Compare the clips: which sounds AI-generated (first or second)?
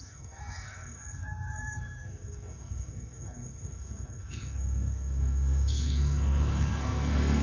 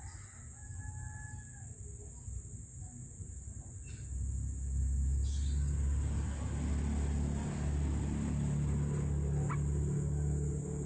first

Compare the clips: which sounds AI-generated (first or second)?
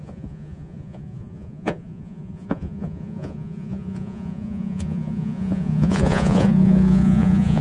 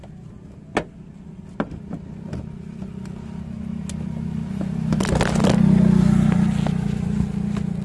first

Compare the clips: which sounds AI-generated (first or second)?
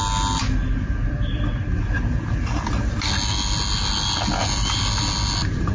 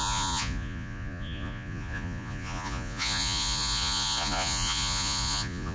second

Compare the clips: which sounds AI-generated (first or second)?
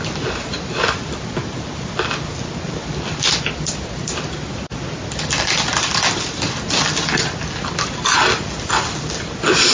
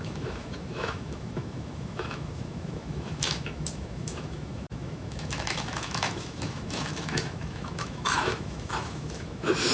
second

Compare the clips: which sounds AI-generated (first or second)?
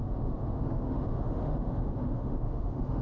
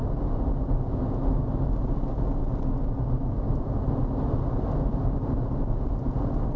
first